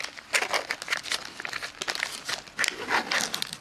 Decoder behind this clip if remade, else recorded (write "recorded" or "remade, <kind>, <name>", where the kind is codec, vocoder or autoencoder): recorded